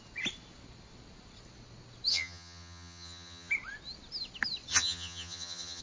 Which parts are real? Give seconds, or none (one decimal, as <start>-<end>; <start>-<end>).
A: 0.0-2.1; 3.5-4.7